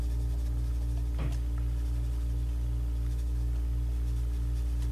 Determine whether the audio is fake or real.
real